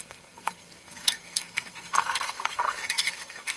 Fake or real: fake